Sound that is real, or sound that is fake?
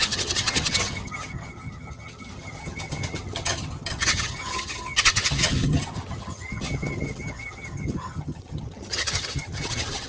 fake